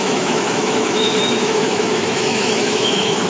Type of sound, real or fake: fake